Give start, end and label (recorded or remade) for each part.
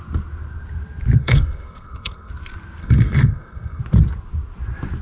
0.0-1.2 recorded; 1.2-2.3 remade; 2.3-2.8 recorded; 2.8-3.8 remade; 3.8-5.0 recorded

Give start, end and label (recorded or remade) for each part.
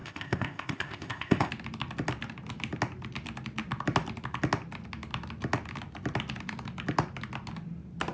0.0-1.5 remade; 1.5-8.1 recorded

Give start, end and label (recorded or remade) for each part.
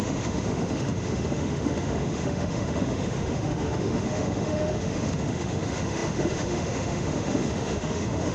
0.0-8.3 remade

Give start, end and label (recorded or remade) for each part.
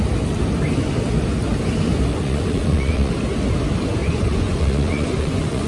0.0-2.1 recorded; 2.1-3.1 remade; 3.1-4.0 recorded; 4.0-5.7 remade